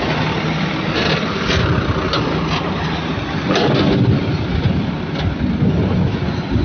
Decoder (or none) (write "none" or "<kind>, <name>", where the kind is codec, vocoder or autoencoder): none